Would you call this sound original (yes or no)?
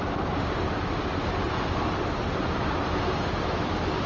yes